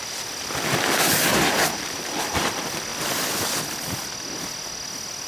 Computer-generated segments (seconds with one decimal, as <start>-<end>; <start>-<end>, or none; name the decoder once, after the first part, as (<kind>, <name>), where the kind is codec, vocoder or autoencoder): 1.3-2.5 (vocoder, BigVGAN v2)